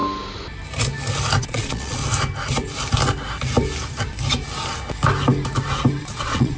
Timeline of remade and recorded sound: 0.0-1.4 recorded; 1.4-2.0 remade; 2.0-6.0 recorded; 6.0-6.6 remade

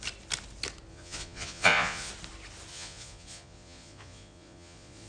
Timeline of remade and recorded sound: 0.0-0.9 recorded; 0.9-2.1 remade; 2.1-2.7 recorded; 2.7-5.1 remade

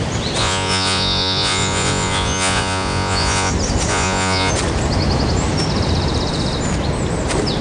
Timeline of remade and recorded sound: 0.0-0.4 recorded; 0.4-3.5 remade; 3.5-3.9 recorded; 3.9-4.5 remade; 4.5-7.6 recorded

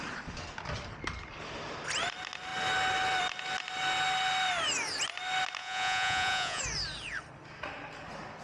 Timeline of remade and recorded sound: 0.0-5.6 recorded; 5.6-6.6 remade; 6.6-8.4 recorded

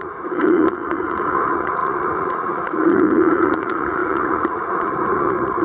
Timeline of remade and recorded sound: 0.0-5.6 remade

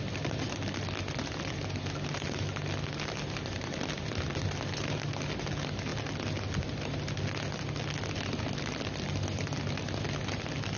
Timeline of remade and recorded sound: 0.0-10.8 recorded

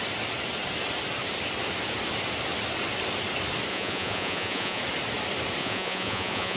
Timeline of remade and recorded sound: 0.0-3.7 recorded; 3.7-4.8 remade; 4.8-5.6 recorded; 5.6-6.6 remade